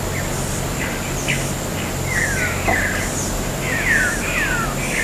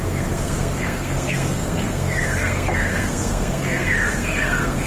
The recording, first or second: first